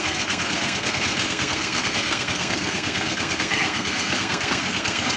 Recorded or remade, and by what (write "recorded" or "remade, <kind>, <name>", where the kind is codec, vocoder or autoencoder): remade, codec, SNAC